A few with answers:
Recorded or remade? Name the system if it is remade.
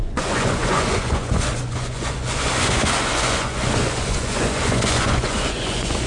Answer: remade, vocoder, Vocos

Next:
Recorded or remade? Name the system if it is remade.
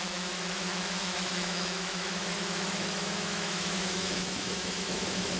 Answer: remade, autoencoder, DAC-VAE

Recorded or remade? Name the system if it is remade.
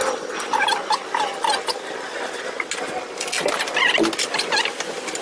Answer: recorded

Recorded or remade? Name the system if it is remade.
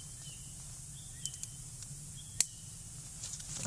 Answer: recorded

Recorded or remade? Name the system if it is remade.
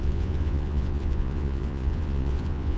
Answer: remade, vocoder, Vocos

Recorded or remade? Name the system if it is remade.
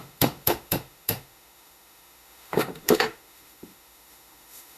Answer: remade, autoencoder, DAC-VAE